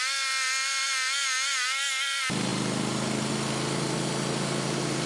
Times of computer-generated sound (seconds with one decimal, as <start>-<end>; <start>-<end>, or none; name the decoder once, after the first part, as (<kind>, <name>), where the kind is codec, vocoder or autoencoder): none